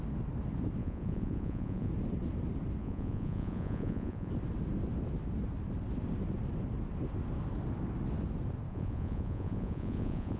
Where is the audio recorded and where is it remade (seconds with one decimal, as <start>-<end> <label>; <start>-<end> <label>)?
0.0-0.8 recorded; 0.8-1.9 remade; 1.9-2.8 recorded; 2.8-4.3 remade; 4.3-8.7 recorded; 8.7-10.4 remade